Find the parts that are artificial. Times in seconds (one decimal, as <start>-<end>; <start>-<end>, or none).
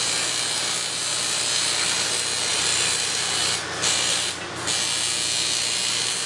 none